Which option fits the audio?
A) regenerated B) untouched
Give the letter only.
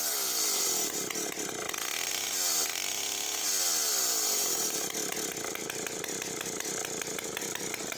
B